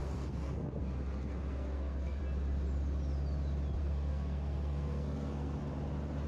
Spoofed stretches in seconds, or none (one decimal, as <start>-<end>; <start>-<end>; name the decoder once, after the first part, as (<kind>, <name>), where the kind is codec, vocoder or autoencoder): 0.0-2.2 (codec, SNAC); 3.8-5.7